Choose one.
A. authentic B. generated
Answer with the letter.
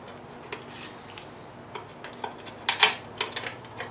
A